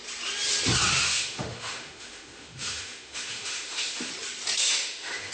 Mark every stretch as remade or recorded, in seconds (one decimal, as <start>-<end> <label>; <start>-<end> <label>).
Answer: 0.0-0.9 recorded; 0.9-4.1 remade; 4.1-4.6 recorded; 4.6-5.3 remade